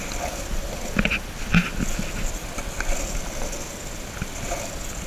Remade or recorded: recorded